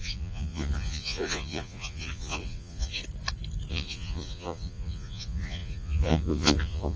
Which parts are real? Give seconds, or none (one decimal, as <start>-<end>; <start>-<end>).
3.0-3.7